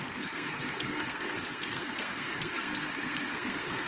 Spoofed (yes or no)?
yes